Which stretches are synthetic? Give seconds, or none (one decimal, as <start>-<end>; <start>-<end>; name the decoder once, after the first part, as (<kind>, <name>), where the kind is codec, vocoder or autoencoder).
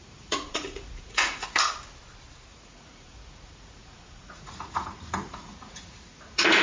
0.0-1.7 (vocoder, Vocos); 2.5-6.6